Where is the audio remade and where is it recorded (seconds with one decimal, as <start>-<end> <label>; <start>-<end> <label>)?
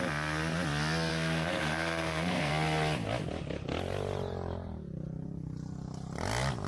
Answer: 0.0-1.1 recorded; 1.1-2.5 remade; 2.5-6.7 recorded